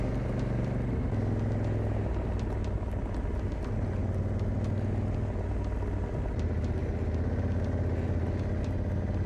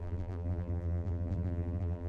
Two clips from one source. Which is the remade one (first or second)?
second